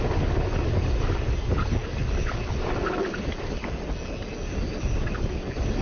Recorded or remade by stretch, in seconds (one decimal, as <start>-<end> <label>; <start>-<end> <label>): 0.0-5.8 recorded